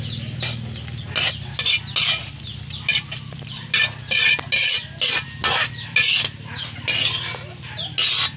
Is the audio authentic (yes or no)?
yes